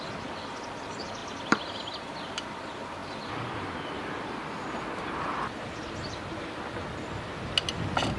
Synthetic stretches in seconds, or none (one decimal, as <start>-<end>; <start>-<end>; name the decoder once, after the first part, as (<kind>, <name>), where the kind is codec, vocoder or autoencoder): 1.2-1.8 (vocoder, BigVGAN v2)